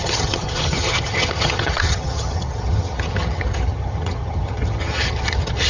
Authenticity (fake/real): fake